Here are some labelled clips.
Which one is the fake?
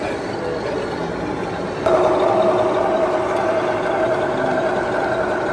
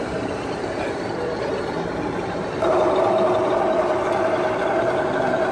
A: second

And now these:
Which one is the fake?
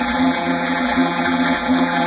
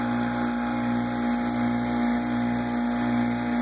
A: first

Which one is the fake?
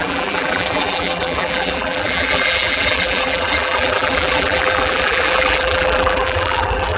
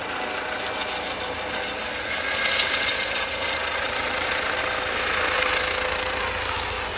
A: first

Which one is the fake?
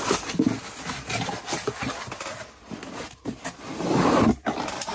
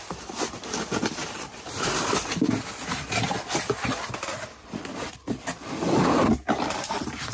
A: second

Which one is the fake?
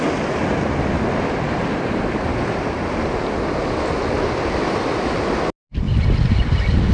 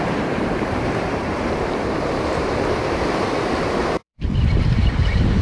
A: second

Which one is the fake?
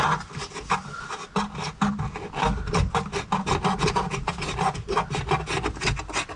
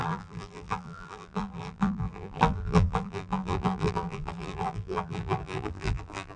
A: second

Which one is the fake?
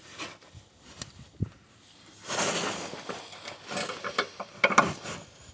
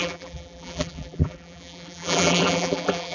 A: second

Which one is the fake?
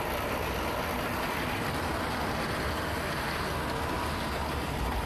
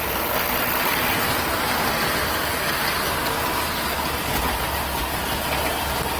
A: second